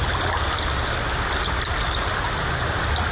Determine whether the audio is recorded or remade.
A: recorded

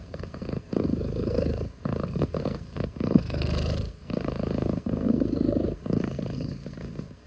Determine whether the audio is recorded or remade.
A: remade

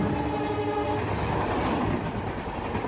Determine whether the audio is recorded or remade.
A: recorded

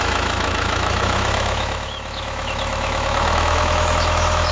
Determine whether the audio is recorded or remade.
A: remade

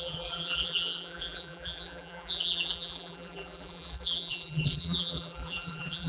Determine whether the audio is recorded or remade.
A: remade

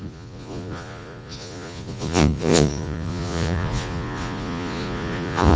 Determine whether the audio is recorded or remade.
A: remade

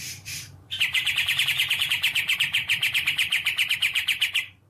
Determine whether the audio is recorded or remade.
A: remade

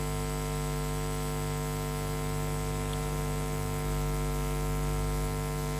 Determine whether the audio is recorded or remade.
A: recorded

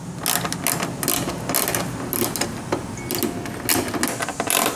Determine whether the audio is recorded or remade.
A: recorded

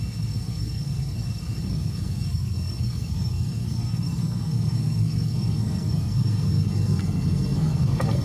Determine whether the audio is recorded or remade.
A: remade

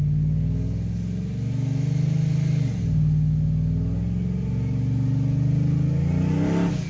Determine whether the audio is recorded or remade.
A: recorded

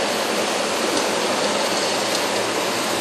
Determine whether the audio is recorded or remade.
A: recorded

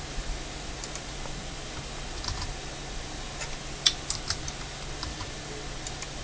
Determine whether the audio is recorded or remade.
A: recorded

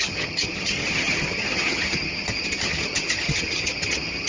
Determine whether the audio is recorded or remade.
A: remade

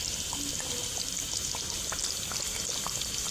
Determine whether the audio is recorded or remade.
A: recorded